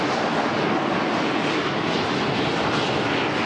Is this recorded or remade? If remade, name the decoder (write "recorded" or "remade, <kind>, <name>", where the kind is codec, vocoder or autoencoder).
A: recorded